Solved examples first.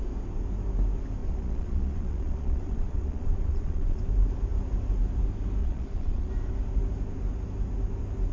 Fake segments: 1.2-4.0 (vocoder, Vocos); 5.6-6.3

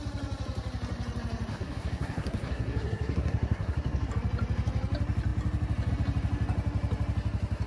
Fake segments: 1.5-4.1 (codec, SNAC)

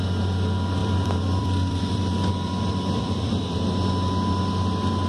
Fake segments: 0.8-3.7 (vocoder, BigVGAN v2)

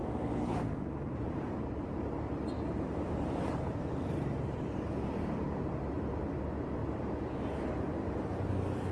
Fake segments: 0.0-4.8 (vocoder, BigVGAN v2); 6.8-8.5

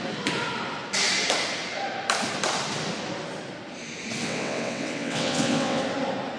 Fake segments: 4.2-5.8 (vocoder, WaveNeXt)

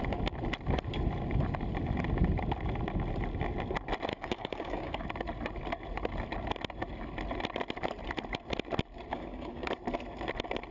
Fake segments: 4.1-5.0 (codec, DAC); 9.1-9.7

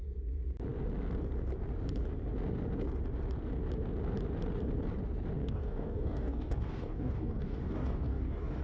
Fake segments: 5.4-8.6 (codec, DAC)